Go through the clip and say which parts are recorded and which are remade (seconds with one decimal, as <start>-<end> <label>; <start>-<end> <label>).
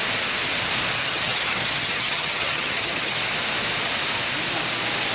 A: 0.0-1.0 recorded; 1.0-3.2 remade; 3.2-5.1 recorded